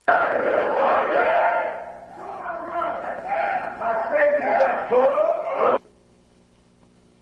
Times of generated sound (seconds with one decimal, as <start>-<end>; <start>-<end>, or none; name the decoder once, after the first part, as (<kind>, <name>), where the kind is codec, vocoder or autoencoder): 0.0-1.5 (codec, HILCodec); 2.1-7.2